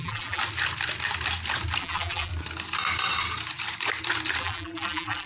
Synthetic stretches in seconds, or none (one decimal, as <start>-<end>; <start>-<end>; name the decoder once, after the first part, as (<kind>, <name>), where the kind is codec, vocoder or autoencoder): 0.0-0.4 (vocoder, BigVGAN v2); 1.8-2.3; 4.4-5.3